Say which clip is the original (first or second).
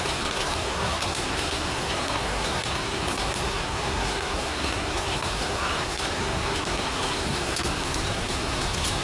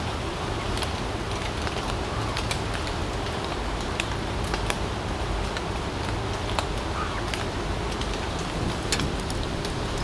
second